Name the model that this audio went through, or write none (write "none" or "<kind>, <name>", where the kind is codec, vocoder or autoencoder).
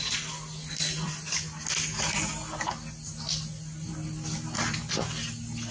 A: none